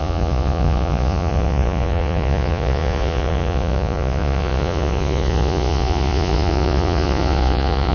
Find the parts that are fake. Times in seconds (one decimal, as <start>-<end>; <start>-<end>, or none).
0.0-7.9